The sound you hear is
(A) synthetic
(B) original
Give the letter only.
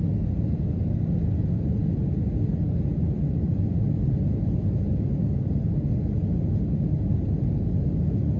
B